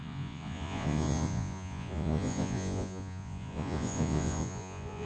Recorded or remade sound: remade